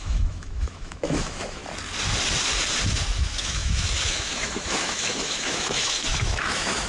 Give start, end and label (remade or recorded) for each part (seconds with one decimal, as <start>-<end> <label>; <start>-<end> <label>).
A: 0.0-1.6 remade; 1.6-3.2 recorded; 3.2-6.9 remade